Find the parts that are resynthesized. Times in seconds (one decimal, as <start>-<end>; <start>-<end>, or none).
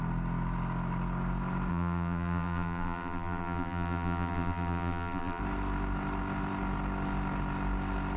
1.7-5.4